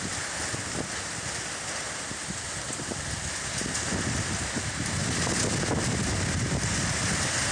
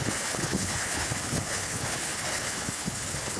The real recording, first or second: first